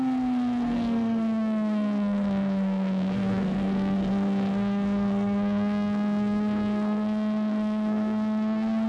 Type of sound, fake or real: fake